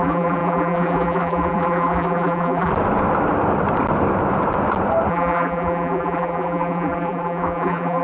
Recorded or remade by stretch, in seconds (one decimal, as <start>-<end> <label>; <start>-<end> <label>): 0.0-2.7 remade; 2.7-5.1 recorded; 5.1-8.0 remade